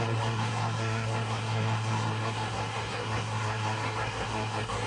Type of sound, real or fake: fake